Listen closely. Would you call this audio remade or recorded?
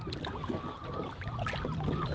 recorded